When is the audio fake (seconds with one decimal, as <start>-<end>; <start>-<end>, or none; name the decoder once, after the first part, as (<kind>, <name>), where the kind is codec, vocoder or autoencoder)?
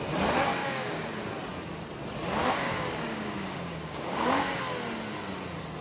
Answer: 0.6-1.1 (codec, DAC); 2.4-4.6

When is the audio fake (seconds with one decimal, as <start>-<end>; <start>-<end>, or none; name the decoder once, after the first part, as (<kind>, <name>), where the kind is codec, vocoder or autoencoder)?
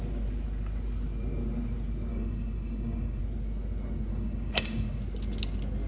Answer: 2.1-3.2 (codec, DAC); 4.1-5.0